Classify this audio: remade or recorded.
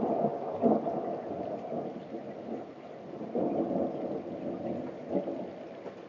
recorded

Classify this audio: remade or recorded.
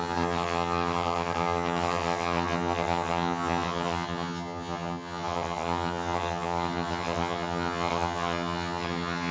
remade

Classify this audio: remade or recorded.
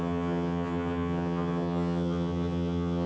remade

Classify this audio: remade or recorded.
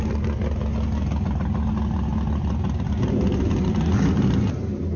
recorded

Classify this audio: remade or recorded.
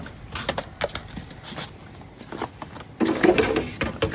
recorded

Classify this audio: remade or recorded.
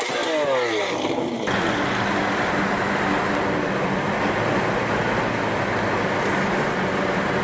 recorded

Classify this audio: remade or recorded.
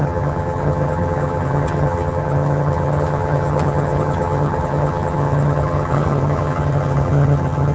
remade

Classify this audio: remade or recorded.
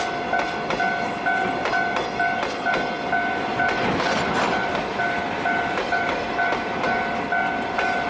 recorded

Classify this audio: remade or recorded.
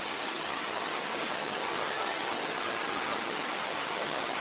remade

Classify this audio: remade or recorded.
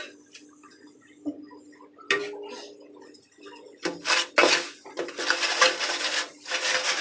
recorded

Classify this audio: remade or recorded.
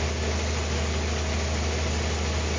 recorded